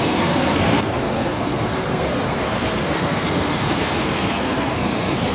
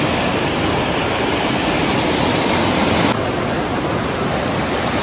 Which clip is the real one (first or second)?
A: second